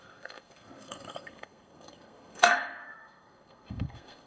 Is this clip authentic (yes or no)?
no